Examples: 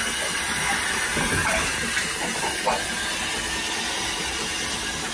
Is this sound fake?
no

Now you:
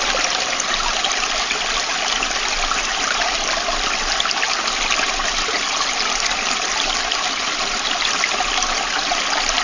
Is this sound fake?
no